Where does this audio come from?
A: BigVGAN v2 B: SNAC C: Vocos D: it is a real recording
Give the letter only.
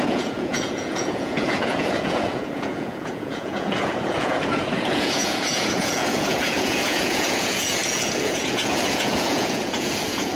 C